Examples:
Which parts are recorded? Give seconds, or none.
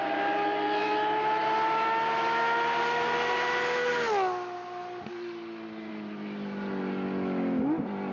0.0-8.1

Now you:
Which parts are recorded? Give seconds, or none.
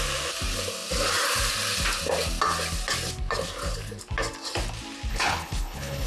0.0-5.1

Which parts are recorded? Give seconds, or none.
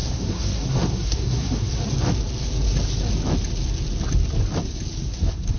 1.7-5.1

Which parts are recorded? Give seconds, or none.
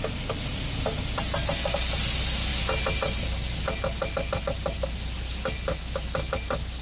0.0-6.8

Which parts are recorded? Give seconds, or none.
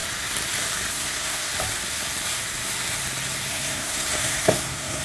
0.0-0.9; 1.5-3.5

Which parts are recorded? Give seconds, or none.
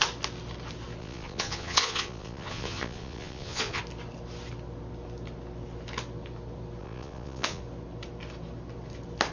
0.0-1.0; 3.8-6.8; 7.6-9.3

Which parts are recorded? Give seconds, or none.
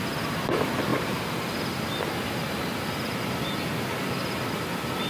0.0-5.1